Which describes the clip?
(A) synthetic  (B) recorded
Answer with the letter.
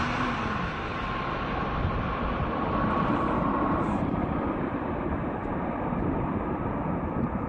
A